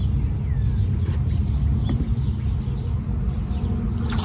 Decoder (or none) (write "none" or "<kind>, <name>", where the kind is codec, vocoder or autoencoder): none